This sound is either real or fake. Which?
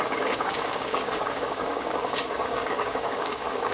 fake